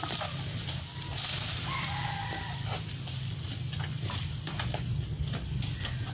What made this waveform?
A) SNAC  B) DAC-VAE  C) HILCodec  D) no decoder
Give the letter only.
D